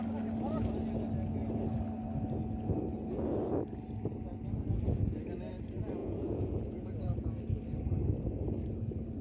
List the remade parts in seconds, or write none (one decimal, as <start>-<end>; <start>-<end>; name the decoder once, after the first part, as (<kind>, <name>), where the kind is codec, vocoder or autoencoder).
6.0-7.4 (vocoder, Vocos)